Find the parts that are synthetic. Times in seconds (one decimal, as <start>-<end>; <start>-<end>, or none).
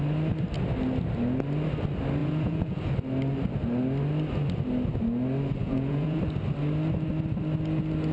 2.2-2.9; 5.6-6.2